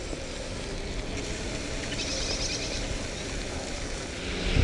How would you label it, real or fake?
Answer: real